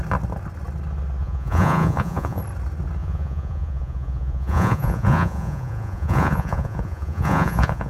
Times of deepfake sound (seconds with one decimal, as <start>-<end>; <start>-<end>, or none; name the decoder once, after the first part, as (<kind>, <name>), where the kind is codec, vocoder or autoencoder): 1.2-2.4 (vocoder, Vocos); 3.0-7.9